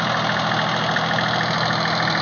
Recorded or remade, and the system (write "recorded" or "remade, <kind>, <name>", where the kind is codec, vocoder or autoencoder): recorded